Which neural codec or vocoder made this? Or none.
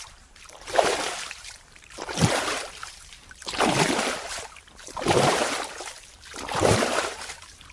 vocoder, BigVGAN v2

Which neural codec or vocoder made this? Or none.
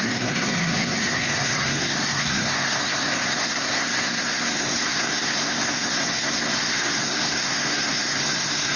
codec, SNAC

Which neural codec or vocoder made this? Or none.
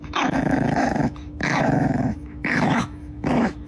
autoencoder, DAC-VAE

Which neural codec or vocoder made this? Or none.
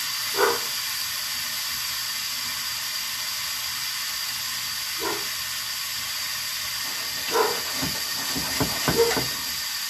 none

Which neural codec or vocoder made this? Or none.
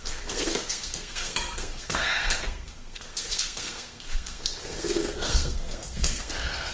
codec, SNAC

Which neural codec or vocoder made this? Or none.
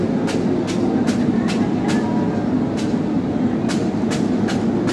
none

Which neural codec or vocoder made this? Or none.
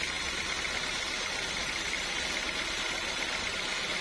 none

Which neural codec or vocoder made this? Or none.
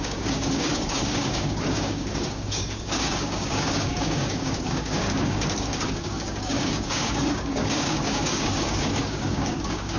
codec, DAC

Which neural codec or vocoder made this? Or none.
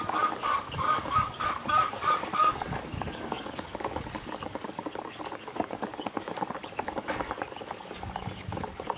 codec, DAC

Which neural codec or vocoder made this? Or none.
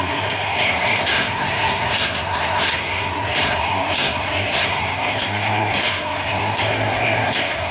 codec, SNAC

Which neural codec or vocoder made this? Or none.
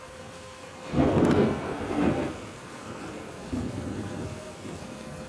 codec, SNAC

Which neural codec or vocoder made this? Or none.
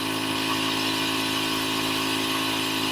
none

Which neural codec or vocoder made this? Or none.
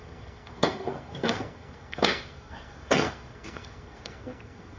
codec, SNAC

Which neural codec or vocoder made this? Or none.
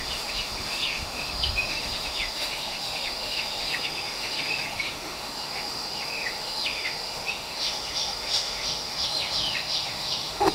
autoencoder, DAC-VAE